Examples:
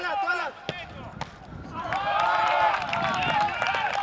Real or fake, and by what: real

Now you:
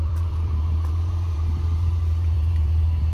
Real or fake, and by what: fake, vocoder, BigVGAN v2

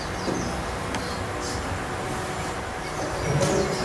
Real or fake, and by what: real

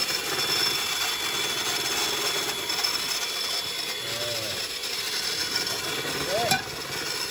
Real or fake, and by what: real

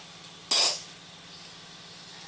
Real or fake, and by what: real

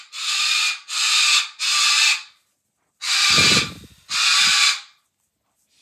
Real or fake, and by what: real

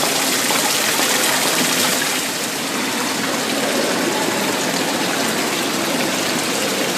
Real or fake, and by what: real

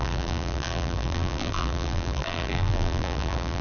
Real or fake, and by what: fake, vocoder, BigVGAN v2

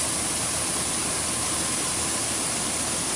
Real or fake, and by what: real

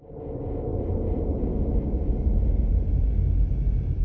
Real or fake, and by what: real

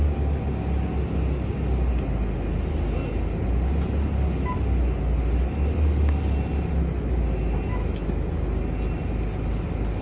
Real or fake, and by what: real